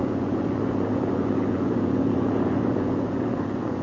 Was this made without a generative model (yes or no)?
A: no